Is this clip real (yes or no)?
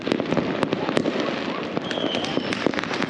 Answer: yes